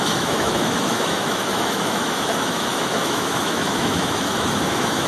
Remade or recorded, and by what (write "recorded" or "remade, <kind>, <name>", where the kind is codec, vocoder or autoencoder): remade, autoencoder, DAC-VAE